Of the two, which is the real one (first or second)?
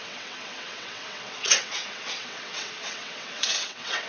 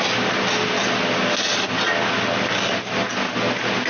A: second